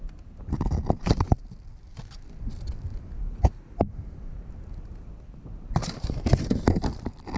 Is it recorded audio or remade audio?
recorded